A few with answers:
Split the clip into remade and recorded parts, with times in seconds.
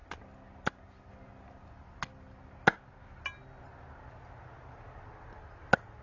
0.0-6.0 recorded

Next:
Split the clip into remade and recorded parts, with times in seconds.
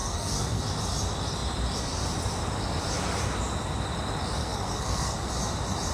0.0-0.6 remade; 0.6-4.4 recorded; 4.4-5.3 remade; 5.3-5.9 recorded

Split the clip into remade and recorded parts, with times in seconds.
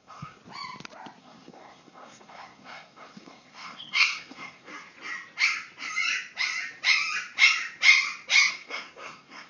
0.0-0.4 remade; 0.4-1.2 recorded; 1.2-4.7 remade; 4.7-8.5 recorded; 8.5-9.5 remade